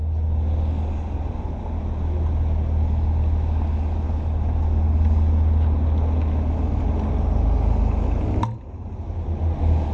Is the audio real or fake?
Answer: real